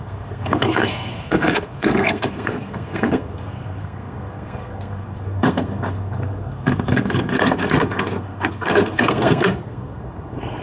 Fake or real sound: fake